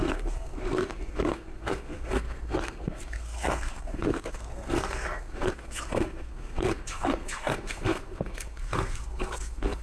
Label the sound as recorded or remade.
remade